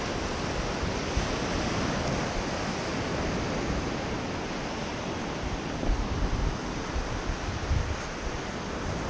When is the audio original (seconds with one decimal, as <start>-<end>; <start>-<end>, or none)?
0.0-9.1

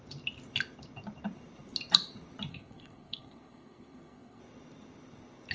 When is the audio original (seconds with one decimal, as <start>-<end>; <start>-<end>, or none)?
0.0-2.5; 4.4-5.5

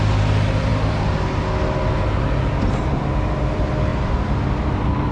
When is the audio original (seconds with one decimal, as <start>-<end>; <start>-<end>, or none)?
0.0-0.7; 1.4-3.9; 4.5-5.1

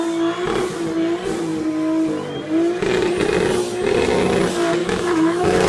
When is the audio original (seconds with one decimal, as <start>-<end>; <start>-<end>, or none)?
0.0-4.8

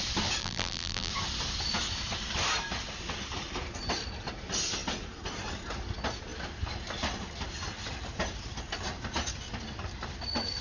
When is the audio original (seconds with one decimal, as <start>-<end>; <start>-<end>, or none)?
0.0-0.4; 1.1-10.6

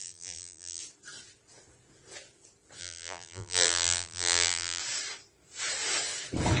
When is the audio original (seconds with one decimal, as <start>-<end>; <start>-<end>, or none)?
0.8-2.8; 4.8-6.6